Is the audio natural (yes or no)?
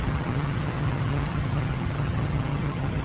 no